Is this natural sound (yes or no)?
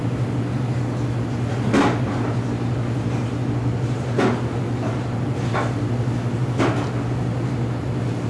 yes